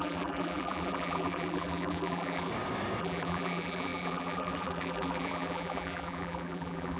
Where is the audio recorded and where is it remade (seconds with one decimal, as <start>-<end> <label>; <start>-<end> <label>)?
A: 0.0-2.5 remade; 2.5-3.0 recorded; 3.0-7.0 remade